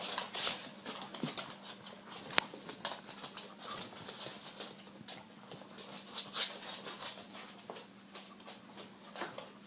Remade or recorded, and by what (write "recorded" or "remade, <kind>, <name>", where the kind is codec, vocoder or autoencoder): recorded